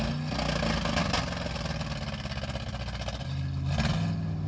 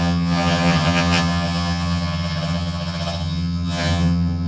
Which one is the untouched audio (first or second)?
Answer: first